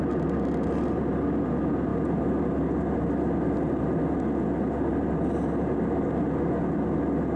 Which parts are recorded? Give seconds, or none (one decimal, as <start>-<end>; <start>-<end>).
0.0-7.4

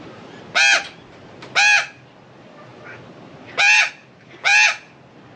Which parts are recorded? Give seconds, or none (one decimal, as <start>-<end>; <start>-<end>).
0.0-5.4